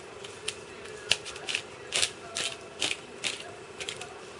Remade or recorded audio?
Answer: recorded